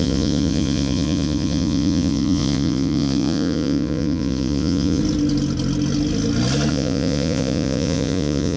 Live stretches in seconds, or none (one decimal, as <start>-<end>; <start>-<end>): 5.0-6.7